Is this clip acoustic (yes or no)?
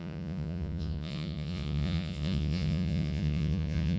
no